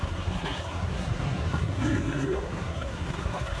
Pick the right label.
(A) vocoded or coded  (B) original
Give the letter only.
A